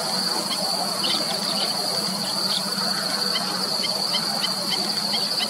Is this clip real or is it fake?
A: real